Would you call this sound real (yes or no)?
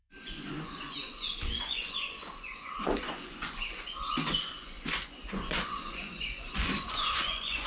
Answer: no